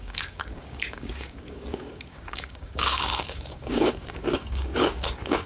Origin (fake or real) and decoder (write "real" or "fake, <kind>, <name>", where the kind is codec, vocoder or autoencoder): fake, codec, DAC